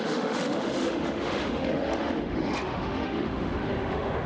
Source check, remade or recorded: remade